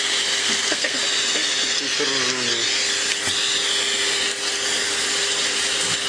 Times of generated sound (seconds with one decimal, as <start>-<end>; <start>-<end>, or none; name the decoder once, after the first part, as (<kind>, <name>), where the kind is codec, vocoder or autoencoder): 0.4-1.0 (codec, SNAC)